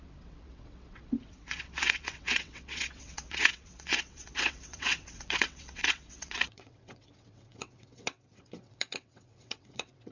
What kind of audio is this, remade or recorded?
remade